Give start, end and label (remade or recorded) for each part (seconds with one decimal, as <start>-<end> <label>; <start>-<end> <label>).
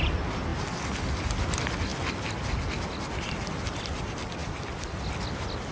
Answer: 0.0-5.7 recorded